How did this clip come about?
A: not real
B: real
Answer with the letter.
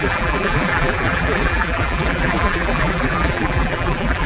A